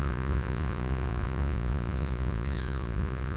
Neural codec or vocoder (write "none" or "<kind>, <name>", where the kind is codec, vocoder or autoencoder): vocoder, Vocos